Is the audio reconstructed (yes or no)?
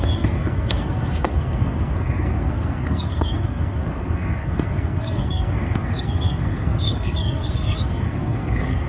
yes